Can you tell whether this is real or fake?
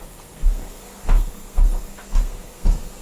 fake